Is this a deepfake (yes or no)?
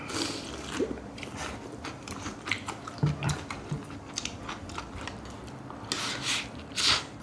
no